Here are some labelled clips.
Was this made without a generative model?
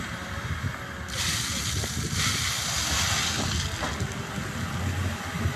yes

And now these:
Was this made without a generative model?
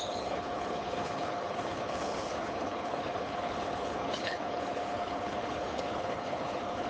no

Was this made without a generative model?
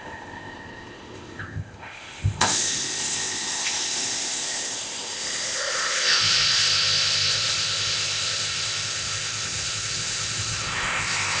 no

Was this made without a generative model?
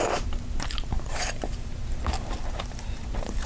no